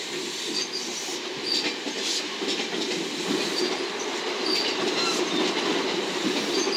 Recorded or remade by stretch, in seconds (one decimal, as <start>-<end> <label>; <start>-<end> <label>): 0.0-6.8 recorded